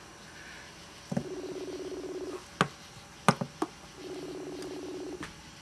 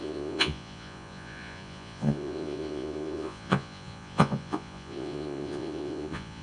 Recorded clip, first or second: first